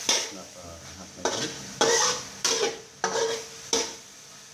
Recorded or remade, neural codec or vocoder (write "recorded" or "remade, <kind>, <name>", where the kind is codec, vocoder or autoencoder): recorded